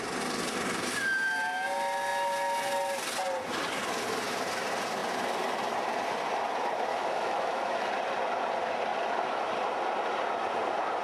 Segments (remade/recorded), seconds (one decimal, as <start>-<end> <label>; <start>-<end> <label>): 0.0-6.9 recorded; 6.9-7.9 remade; 7.9-11.0 recorded